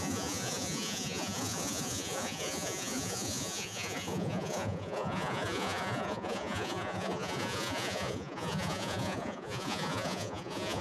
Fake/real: fake